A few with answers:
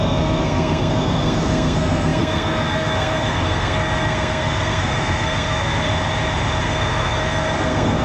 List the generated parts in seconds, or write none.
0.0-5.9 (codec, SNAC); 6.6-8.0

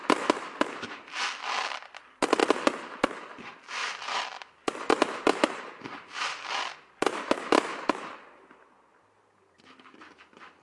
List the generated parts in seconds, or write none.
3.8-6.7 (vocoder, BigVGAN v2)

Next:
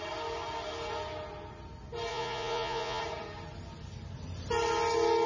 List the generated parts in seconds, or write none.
2.1-3.0 (vocoder, Vocos)